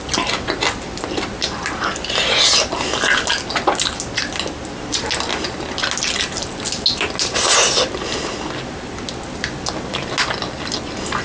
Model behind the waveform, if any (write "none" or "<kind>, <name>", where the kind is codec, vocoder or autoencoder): none